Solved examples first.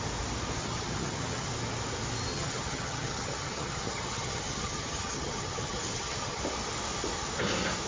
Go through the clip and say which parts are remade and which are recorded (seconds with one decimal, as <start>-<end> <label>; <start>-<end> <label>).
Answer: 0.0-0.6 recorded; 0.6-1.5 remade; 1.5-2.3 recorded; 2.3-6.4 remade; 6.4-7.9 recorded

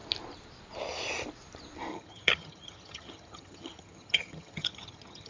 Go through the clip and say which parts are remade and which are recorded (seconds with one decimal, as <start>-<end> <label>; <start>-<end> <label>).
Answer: 0.0-1.9 recorded; 1.9-5.3 remade

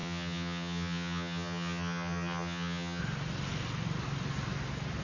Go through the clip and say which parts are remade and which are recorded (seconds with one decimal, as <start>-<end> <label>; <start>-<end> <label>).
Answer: 0.0-3.0 remade; 3.0-5.0 recorded

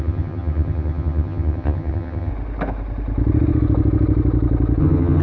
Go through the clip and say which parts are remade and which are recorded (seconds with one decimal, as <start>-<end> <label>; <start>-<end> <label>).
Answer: 0.0-2.3 remade; 2.3-4.8 recorded; 4.8-5.2 remade

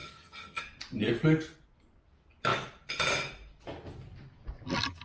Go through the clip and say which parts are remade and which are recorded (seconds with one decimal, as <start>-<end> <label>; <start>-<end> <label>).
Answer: 0.0-0.6 remade; 0.6-5.0 recorded